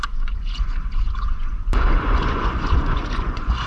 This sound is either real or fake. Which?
fake